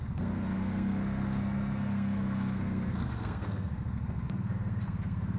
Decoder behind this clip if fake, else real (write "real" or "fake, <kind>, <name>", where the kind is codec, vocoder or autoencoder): fake, codec, SNAC